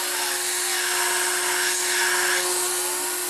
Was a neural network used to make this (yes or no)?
no